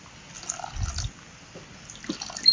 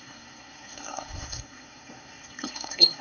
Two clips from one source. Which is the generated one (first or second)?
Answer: second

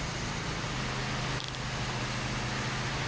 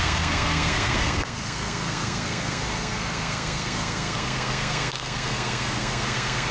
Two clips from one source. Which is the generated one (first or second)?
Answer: second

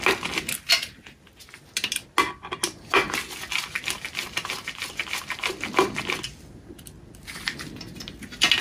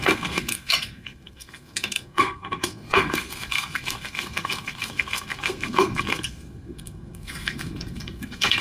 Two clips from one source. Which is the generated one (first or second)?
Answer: second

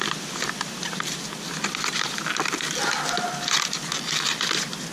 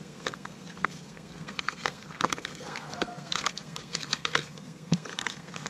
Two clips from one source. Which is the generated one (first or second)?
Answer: second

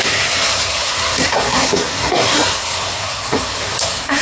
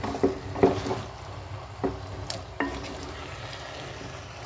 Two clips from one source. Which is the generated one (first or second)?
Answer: first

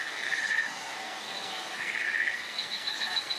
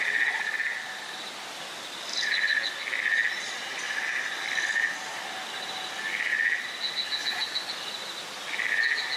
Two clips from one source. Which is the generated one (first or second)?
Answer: first